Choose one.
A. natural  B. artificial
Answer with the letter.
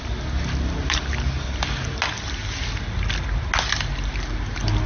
A